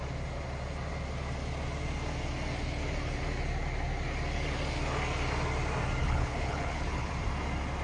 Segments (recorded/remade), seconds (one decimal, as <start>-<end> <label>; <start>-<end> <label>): 0.0-6.0 recorded; 6.0-7.1 remade; 7.1-7.8 recorded